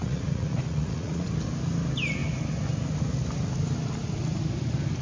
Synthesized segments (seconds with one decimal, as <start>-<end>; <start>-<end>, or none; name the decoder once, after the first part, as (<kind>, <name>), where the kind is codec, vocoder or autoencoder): 0.0-1.3 (vocoder, Vocos)